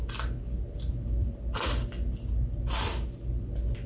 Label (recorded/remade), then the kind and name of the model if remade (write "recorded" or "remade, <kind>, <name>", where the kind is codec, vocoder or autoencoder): recorded